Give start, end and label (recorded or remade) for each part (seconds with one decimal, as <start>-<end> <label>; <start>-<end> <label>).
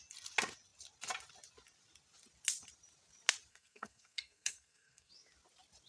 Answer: 0.0-3.5 recorded; 3.5-5.1 remade; 5.1-5.9 recorded